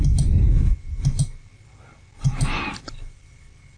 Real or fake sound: real